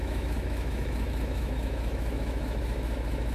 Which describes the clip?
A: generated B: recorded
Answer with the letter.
A